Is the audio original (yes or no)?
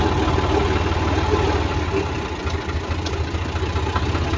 yes